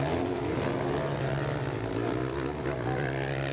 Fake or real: real